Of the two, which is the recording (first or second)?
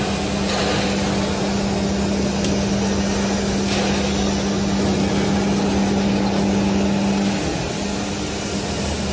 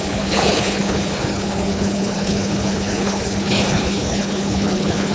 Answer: first